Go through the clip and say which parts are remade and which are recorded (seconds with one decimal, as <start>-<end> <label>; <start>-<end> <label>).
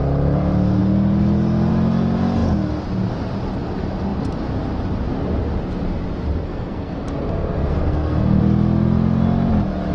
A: 0.0-6.4 recorded; 6.4-8.4 remade; 8.4-9.9 recorded